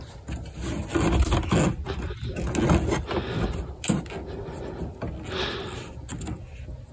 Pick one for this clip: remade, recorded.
recorded